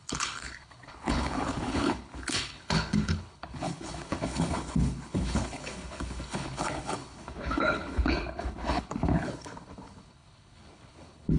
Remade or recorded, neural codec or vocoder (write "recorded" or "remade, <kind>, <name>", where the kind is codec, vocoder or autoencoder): remade, codec, HILCodec